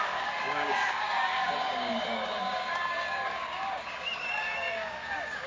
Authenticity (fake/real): fake